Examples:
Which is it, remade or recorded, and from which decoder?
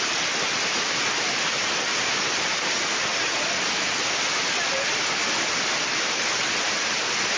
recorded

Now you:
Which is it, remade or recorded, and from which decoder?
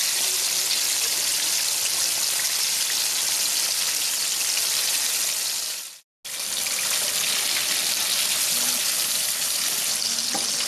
recorded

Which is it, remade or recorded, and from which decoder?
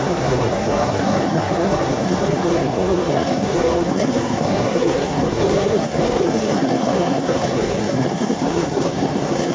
remade, codec, SNAC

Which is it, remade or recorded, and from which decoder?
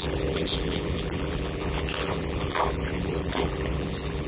remade, vocoder, BigVGAN v2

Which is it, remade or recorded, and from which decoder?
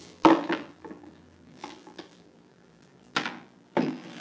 remade, vocoder, BigVGAN v2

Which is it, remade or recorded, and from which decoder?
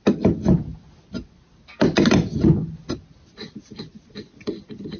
recorded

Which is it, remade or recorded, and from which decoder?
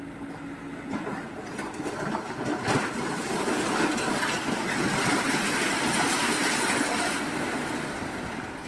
recorded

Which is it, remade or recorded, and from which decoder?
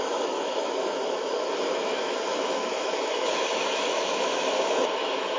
remade, autoencoder, DAC-VAE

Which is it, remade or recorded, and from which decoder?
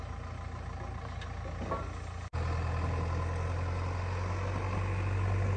recorded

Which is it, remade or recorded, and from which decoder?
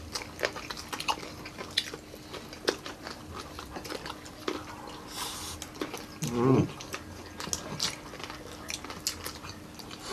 recorded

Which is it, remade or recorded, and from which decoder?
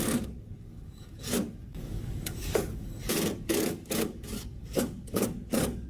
remade, codec, DAC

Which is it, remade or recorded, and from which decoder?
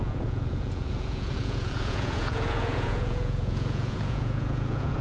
remade, vocoder, Vocos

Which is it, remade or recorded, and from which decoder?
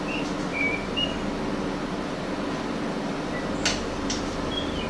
recorded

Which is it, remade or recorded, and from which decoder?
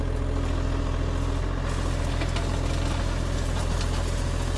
recorded